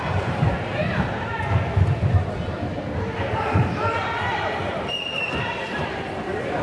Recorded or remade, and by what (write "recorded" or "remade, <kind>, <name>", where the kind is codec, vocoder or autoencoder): remade, vocoder, BigVGAN v2